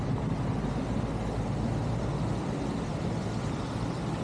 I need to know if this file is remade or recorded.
recorded